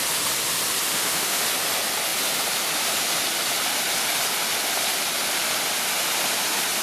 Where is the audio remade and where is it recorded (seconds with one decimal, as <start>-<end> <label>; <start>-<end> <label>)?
0.0-0.9 recorded; 0.9-1.4 remade; 1.4-6.8 recorded